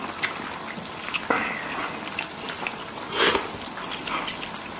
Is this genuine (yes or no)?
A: yes